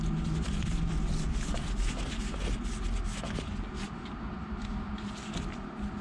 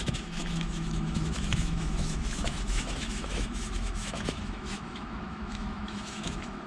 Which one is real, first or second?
first